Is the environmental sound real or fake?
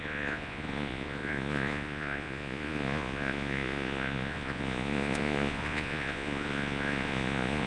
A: fake